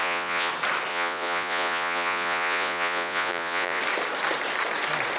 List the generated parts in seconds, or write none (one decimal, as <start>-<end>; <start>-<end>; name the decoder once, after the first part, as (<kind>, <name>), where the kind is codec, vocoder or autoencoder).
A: 0.0-0.5 (vocoder, Vocos); 0.9-3.8